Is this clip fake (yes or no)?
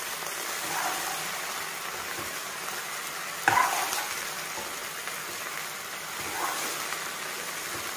no